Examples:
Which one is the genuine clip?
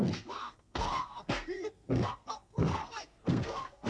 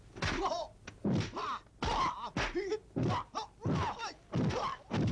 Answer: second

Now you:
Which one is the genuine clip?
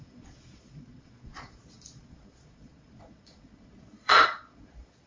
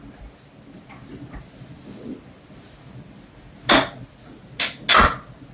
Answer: second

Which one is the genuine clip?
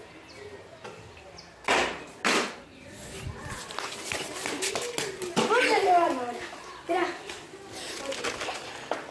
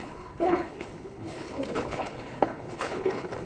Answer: first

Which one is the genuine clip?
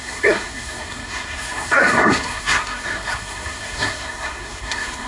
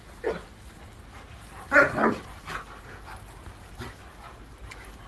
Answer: second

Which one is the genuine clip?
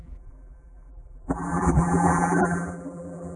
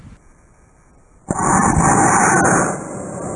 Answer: second